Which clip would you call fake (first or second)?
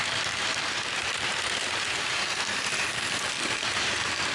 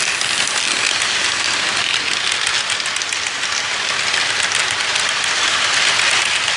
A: first